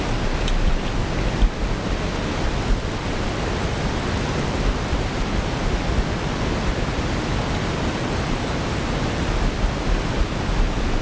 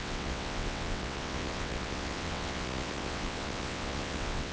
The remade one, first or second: second